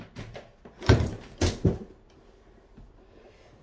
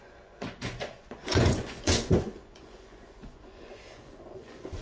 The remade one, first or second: second